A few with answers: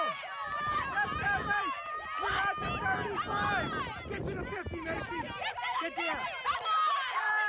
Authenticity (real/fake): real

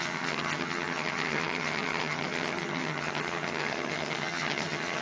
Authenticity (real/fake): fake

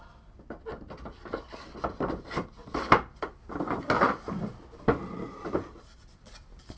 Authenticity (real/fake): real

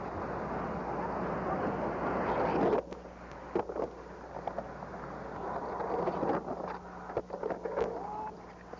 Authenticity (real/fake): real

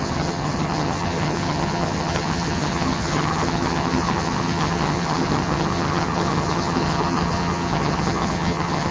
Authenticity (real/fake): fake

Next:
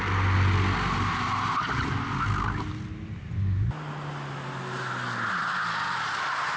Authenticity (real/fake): real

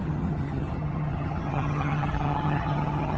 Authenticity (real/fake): fake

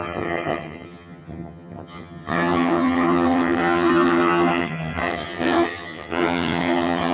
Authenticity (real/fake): fake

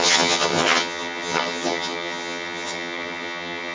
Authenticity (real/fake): fake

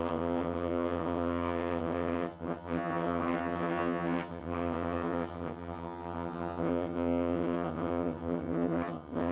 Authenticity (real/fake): fake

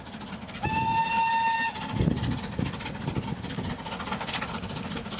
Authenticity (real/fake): real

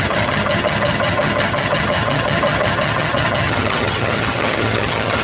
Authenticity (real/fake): fake